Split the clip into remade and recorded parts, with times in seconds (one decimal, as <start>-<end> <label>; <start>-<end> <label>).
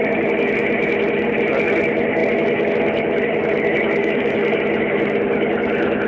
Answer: 0.0-4.0 recorded; 4.0-4.6 remade; 4.6-6.1 recorded